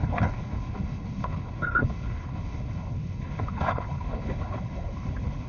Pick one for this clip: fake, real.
fake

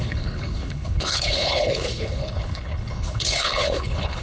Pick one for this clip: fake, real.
fake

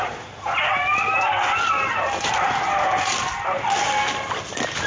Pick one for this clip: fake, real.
real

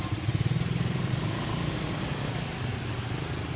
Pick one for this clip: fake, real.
real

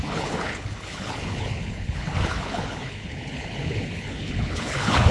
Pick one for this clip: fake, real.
fake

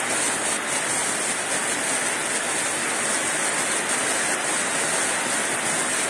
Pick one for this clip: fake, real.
real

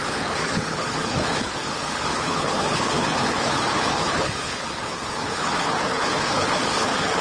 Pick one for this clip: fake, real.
fake